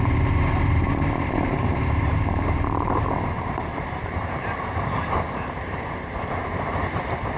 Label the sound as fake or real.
fake